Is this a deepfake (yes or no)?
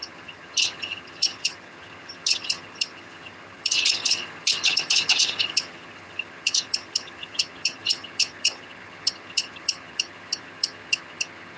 yes